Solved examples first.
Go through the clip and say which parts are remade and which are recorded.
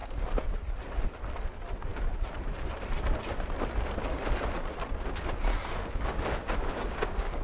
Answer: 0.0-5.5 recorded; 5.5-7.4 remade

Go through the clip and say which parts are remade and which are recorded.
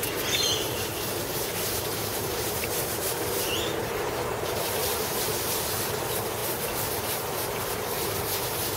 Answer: 0.0-1.2 recorded; 1.2-5.3 remade; 5.3-8.8 recorded